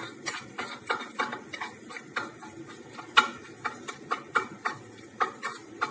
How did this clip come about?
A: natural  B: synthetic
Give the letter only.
A